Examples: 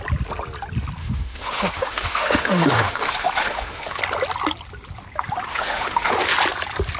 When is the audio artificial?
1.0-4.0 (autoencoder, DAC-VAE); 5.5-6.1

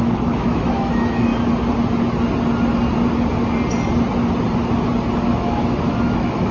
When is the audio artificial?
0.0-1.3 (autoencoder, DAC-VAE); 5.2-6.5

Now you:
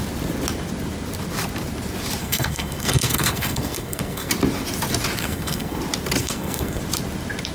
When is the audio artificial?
2.2-4.3 (codec, SNAC); 5.2-5.8; 6.2-6.8

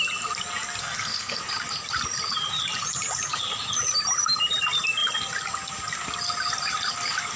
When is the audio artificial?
0.8-1.4 (codec, SNAC)